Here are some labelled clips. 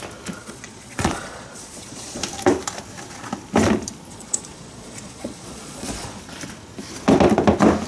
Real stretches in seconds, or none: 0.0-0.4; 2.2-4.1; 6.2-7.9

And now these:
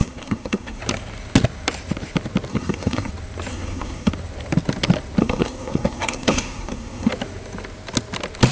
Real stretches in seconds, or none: 0.8-2.5; 3.1-3.5; 4.1-5.2; 7.1-8.5

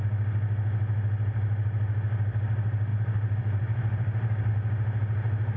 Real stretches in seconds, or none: 0.0-2.9; 4.5-5.6